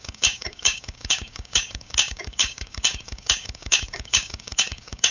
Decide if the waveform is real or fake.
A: fake